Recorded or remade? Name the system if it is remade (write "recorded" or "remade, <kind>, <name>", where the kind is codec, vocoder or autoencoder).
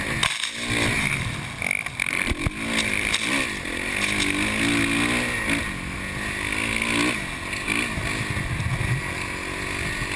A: recorded